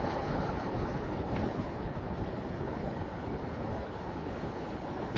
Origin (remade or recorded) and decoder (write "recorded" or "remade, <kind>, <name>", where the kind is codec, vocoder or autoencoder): remade, codec, HILCodec